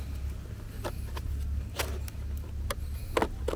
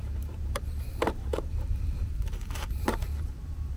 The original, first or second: first